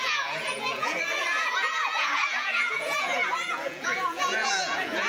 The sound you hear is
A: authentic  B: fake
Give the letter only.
B